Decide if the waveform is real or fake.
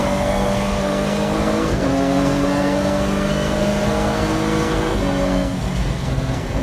fake